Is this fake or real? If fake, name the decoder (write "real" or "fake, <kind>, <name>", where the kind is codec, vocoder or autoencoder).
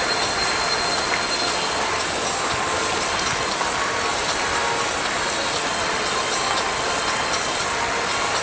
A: real